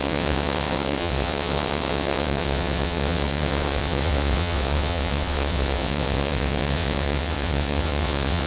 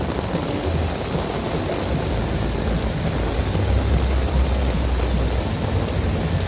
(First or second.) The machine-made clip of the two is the first